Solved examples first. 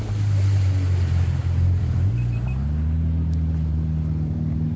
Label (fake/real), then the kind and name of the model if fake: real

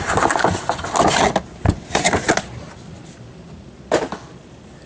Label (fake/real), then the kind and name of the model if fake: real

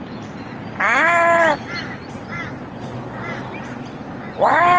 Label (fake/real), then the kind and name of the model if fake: real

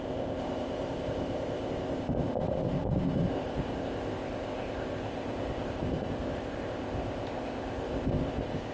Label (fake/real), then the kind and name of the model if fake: fake, codec, ZipCodec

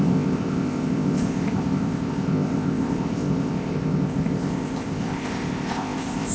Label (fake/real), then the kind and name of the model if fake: fake, codec, ZipCodec